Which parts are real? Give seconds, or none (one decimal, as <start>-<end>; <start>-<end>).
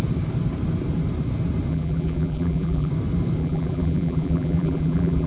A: 0.0-1.7; 2.9-3.4